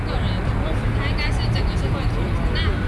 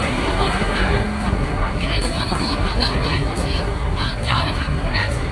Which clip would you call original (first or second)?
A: first